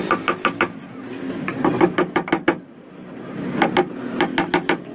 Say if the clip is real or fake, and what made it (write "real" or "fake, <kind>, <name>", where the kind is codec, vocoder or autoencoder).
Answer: real